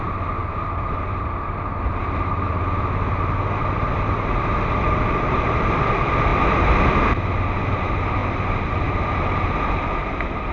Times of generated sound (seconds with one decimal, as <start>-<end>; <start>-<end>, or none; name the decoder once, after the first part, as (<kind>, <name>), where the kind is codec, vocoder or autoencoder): 0.0-10.5 (vocoder, BigVGAN v2)